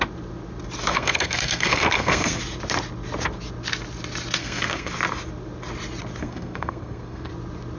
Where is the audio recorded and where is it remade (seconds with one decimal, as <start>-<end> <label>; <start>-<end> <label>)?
0.0-0.9 recorded; 0.9-2.4 remade; 2.4-4.4 recorded; 4.4-4.9 remade; 4.9-6.2 recorded; 6.2-7.3 remade; 7.3-7.8 recorded

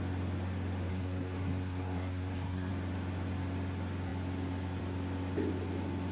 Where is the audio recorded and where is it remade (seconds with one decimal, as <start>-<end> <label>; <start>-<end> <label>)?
0.0-0.9 recorded; 0.9-2.7 remade; 2.7-6.1 recorded

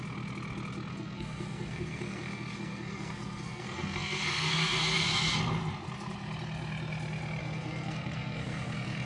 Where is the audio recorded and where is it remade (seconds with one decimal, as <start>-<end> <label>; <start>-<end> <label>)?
0.0-0.9 recorded; 0.9-5.4 remade; 5.4-7.4 recorded; 7.4-9.1 remade

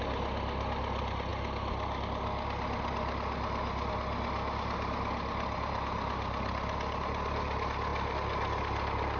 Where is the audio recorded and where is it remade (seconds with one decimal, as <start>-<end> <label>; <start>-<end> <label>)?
0.0-9.2 recorded

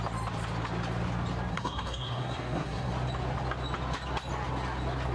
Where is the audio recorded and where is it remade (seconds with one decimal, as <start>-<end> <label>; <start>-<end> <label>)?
0.0-1.5 recorded; 1.5-2.9 remade; 2.9-5.1 recorded

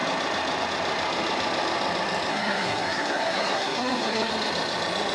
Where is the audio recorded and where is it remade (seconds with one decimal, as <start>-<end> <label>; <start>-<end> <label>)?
0.0-2.3 recorded; 2.3-4.3 remade; 4.3-5.1 recorded

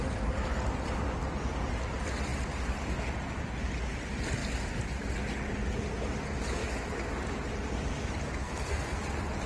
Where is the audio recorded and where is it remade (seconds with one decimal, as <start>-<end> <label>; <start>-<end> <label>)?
0.0-8.4 recorded; 8.4-9.0 remade; 9.0-9.5 recorded